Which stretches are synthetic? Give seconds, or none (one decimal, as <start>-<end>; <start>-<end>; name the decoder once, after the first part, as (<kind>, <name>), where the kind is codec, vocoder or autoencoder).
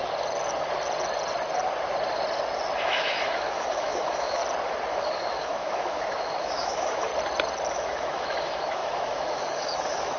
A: 2.8-4.4 (autoencoder, DAC-VAE); 4.9-7.1; 7.7-10.2